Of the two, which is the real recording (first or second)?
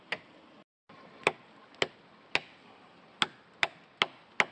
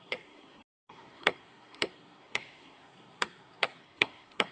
first